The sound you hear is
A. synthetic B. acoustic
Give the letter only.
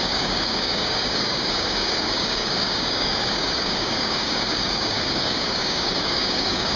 A